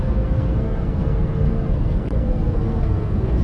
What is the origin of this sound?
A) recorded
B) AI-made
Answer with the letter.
B